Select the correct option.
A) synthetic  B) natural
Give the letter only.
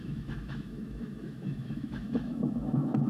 A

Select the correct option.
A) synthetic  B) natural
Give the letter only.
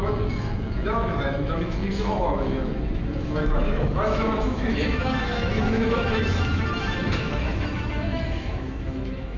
A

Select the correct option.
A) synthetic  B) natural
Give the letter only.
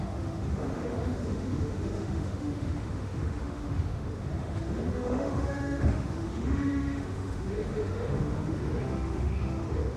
A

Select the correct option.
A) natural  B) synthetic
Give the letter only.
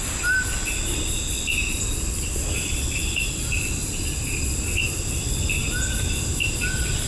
A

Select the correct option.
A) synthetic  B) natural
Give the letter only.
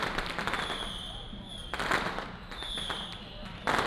B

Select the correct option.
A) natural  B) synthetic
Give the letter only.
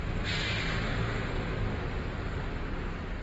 A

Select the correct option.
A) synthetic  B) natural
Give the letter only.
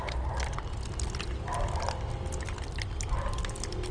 B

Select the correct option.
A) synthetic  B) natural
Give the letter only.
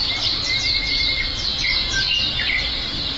B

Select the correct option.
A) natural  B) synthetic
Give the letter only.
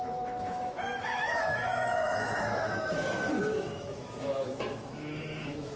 B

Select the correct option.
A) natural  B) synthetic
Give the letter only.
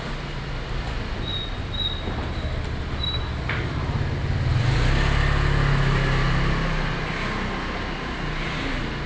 A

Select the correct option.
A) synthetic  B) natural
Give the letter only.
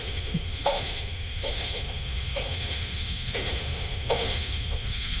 A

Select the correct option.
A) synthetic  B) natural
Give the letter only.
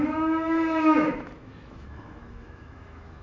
A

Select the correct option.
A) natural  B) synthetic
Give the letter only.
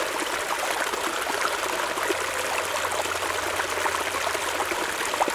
A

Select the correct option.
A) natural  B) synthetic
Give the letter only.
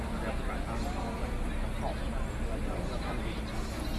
A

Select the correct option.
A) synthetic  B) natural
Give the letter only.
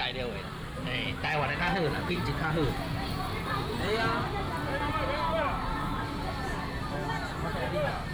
B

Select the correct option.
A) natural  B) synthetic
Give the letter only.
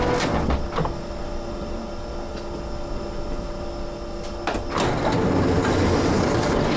A